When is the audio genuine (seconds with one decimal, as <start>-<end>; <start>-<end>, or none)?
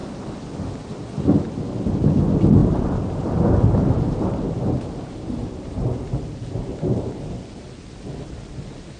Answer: 0.0-2.6; 7.3-9.0